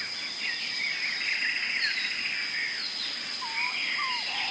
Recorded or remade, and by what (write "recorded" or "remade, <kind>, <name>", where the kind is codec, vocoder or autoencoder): recorded